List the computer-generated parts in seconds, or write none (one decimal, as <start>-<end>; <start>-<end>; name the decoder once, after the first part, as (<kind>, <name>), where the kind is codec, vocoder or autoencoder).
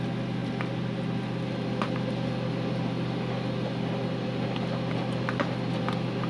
0.4-2.5 (vocoder, BigVGAN v2)